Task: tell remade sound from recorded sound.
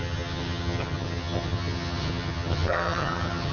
remade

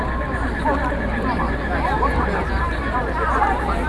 remade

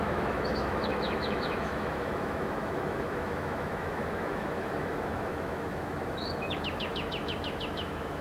remade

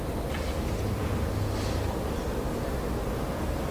recorded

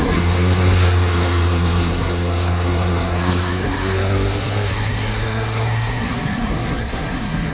remade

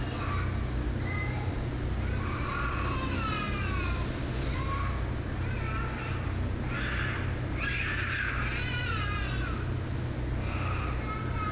recorded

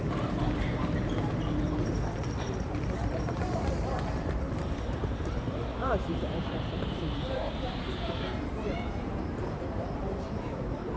remade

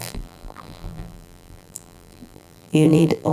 remade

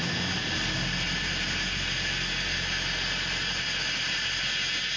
recorded